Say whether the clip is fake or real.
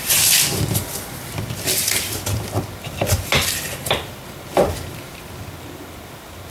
fake